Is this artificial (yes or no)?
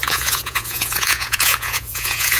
yes